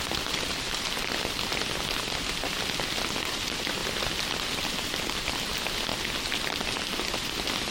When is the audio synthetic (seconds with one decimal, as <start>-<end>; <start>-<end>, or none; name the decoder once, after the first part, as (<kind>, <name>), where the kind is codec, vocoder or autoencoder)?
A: none